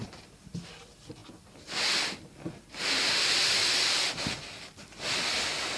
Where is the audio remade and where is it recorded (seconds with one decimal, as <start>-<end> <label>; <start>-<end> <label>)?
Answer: 0.0-5.8 recorded